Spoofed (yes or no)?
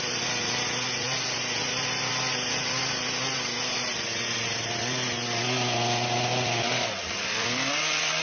no